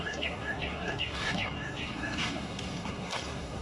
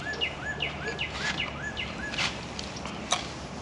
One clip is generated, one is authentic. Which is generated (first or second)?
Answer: first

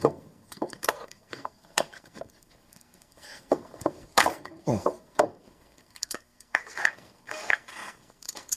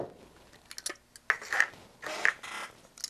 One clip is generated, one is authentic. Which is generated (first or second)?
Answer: first